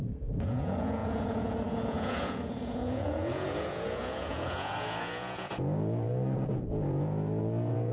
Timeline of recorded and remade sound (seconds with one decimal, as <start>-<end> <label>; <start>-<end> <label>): 0.0-7.9 remade